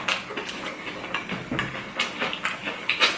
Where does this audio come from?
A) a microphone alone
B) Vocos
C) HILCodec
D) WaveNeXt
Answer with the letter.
A